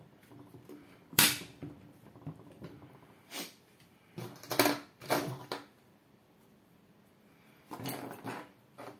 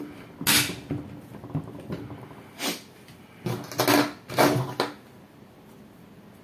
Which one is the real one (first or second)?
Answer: second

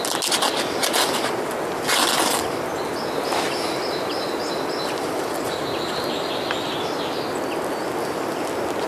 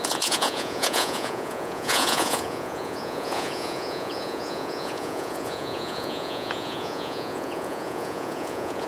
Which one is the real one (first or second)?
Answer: first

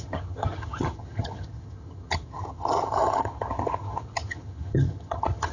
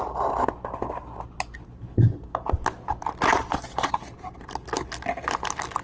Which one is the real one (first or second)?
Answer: second